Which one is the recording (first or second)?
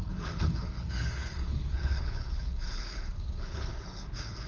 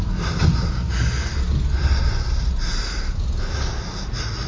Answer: second